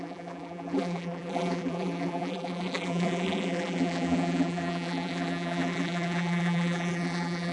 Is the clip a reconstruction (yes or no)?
yes